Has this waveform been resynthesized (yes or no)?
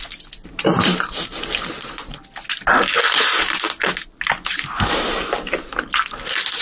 no